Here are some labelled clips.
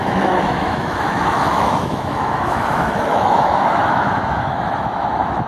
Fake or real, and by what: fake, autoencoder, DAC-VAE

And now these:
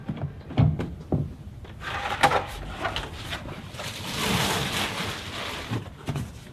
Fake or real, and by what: real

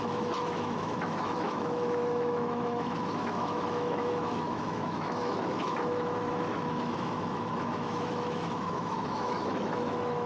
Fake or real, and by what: fake, autoencoder, DAC-VAE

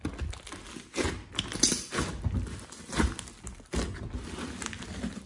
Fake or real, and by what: real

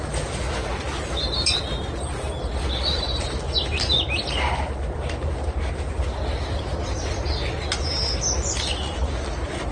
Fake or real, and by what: real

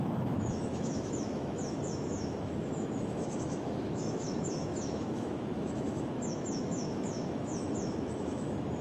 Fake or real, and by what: fake, autoencoder, DAC-VAE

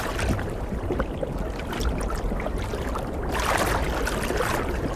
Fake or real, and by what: real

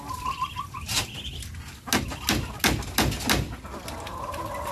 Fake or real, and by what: real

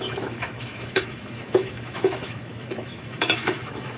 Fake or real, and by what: fake, autoencoder, DAC-VAE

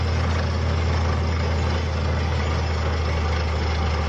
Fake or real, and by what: real